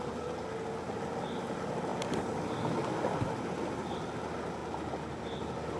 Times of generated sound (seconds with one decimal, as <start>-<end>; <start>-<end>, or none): none